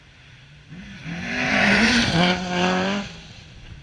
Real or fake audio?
fake